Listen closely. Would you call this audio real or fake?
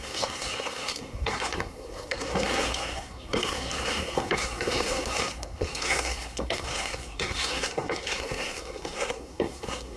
fake